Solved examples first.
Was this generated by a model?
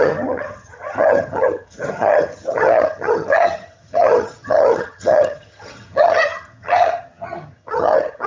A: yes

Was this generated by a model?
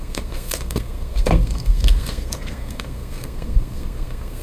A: yes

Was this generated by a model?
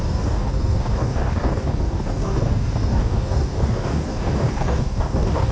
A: yes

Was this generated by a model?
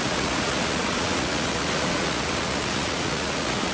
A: yes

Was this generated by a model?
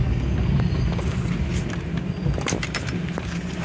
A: no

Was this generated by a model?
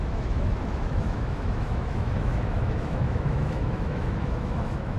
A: yes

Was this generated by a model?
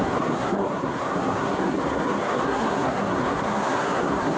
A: yes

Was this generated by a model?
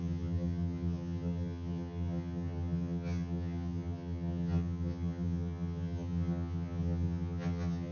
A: yes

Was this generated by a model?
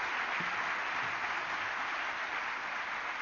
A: no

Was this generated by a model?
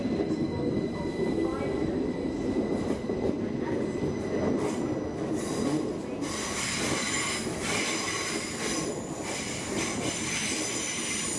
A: no